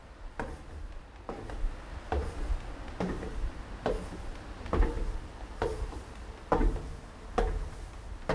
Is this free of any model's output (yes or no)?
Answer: yes